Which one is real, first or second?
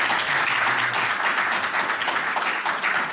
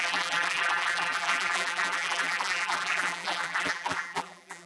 first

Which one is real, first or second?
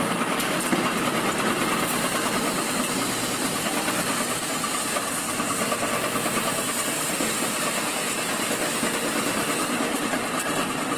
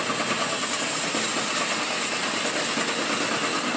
second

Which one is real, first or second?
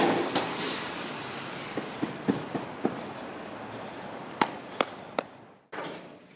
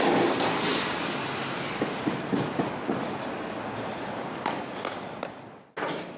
second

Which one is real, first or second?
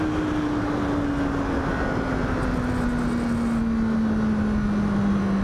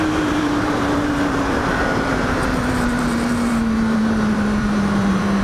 first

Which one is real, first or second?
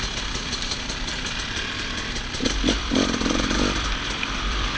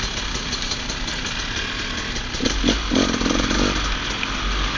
second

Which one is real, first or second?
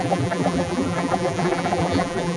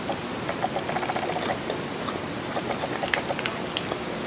second